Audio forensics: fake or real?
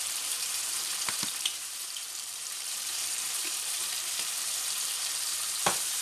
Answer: fake